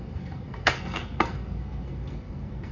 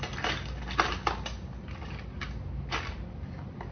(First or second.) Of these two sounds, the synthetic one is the first